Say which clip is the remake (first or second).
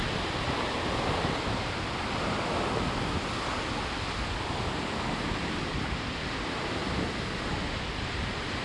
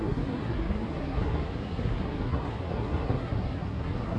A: second